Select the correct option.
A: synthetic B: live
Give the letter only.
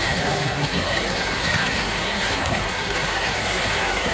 A